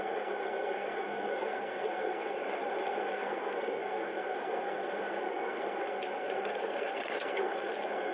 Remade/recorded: remade